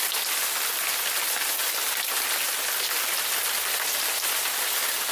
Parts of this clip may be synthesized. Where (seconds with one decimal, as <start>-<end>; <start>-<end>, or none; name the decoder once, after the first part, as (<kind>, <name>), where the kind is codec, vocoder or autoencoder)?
none